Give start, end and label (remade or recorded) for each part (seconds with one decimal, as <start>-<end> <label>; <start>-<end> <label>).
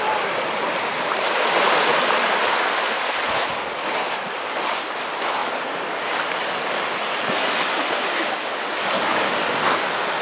0.0-10.2 recorded